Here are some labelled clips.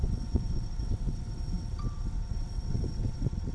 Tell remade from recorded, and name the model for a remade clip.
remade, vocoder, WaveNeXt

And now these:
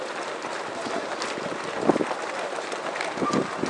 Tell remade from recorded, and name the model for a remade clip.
recorded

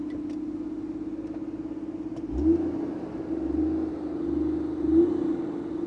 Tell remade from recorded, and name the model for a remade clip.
recorded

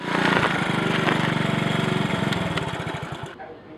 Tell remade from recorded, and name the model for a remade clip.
recorded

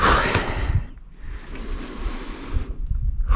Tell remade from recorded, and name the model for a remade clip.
recorded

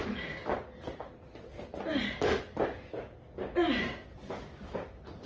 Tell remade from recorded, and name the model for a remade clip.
recorded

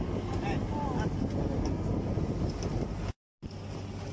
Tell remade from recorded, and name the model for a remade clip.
recorded